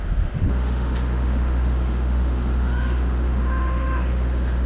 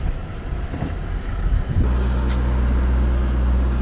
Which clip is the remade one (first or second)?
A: first